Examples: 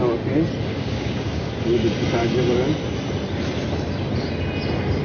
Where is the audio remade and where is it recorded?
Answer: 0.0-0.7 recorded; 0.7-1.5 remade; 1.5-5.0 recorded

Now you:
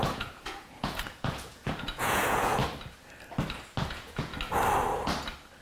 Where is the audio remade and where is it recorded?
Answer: 0.0-2.6 remade; 2.6-3.9 recorded; 3.9-4.3 remade; 4.3-5.6 recorded

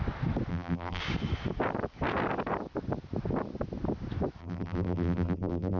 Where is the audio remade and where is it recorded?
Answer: 0.0-0.5 recorded; 0.5-1.0 remade; 1.0-4.4 recorded; 4.4-5.8 remade

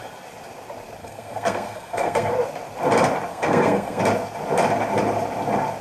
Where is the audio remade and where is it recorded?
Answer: 0.0-1.0 recorded; 1.0-2.3 remade; 2.3-3.3 recorded; 3.3-4.0 remade; 4.0-5.8 recorded

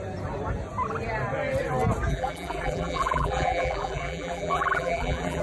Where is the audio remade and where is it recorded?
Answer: 0.0-2.1 recorded; 2.1-5.4 remade